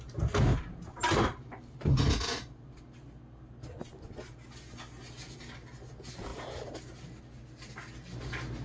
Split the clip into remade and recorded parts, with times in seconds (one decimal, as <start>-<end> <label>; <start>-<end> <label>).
0.0-0.5 recorded; 0.5-1.9 remade; 1.9-6.3 recorded; 6.3-7.2 remade; 7.2-8.6 recorded